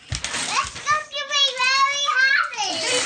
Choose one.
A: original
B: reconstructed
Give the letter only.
A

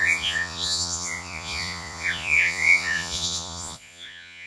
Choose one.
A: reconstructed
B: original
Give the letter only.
A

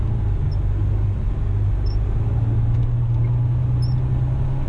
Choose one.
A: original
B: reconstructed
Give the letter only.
A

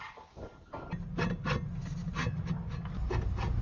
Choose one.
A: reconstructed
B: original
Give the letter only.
B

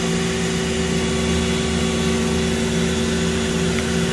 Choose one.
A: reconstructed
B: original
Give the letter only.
B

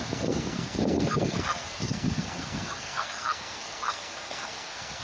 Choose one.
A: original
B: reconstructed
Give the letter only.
B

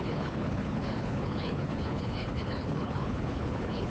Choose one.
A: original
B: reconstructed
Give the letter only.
B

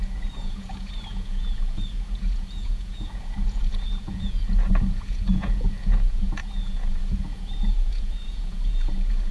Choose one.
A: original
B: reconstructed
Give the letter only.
B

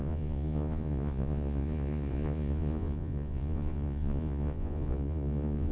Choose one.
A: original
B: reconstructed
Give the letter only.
B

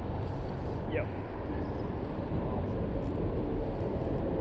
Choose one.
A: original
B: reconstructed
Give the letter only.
A